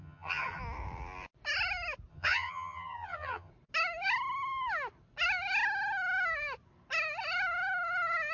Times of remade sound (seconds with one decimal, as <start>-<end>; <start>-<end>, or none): 0.0-0.6; 2.1-3.5